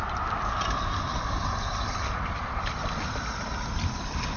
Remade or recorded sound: recorded